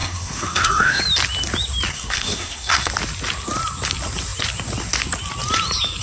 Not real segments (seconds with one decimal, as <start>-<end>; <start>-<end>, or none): 0.0-1.0; 1.9-2.9